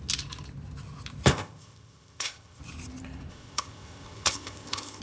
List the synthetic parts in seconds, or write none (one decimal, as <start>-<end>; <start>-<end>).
1.3-2.6; 3.3-5.0